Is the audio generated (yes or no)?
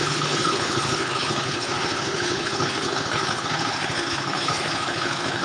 yes